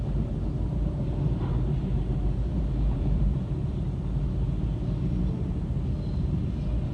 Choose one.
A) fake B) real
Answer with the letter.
B